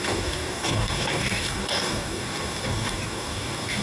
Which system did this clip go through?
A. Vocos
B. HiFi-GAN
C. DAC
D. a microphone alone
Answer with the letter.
C